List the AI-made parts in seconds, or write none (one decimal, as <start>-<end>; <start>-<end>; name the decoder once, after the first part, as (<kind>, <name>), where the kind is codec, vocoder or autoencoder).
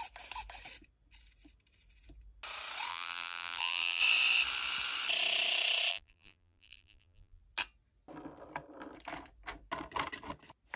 2.9-4.0 (vocoder, BigVGAN v2); 5.9-7.4